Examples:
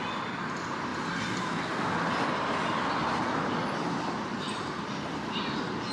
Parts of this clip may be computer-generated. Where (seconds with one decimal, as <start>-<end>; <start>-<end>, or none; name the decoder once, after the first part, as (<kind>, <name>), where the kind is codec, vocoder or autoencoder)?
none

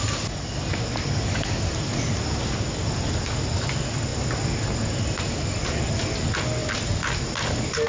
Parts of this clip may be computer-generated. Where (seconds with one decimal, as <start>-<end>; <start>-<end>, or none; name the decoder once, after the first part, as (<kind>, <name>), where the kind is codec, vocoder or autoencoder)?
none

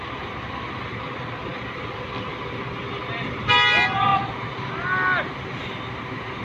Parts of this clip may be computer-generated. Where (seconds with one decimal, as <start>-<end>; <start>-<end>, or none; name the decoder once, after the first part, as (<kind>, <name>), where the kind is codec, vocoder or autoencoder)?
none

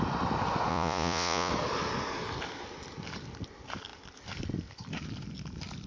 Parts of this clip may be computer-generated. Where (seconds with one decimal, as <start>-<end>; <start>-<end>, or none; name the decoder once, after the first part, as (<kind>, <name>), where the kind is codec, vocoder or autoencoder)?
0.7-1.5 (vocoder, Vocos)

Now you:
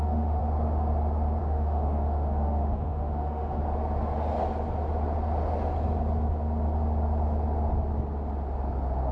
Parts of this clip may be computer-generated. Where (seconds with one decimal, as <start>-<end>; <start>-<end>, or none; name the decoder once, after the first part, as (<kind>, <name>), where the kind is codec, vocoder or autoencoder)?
0.0-0.4 (autoencoder, DAC-VAE); 1.4-3.6

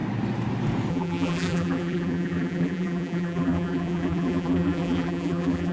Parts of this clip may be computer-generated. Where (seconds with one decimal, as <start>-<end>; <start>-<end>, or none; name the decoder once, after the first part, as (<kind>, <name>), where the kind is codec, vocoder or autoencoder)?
0.9-5.7 (vocoder, BigVGAN v2)